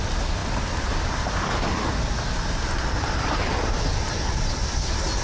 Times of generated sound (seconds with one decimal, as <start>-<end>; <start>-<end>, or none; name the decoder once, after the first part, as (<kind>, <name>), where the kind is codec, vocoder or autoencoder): none